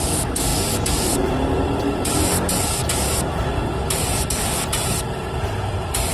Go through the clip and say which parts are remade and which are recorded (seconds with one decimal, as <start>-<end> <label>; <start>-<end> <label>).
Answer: 0.0-6.1 recorded